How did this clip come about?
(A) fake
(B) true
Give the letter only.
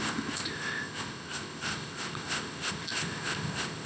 A